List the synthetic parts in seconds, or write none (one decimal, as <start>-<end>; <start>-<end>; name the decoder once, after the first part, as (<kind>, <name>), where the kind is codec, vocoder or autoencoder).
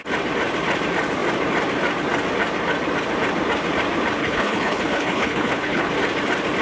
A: 4.2-5.9 (codec, HILCodec)